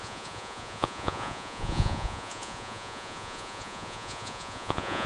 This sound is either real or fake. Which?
fake